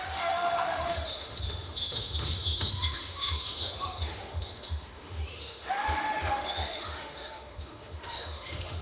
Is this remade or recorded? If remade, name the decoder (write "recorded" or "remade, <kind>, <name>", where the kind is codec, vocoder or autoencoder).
remade, autoencoder, DAC-VAE